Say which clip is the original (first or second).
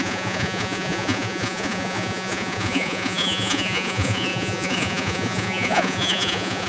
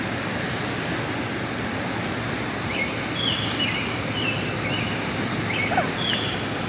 second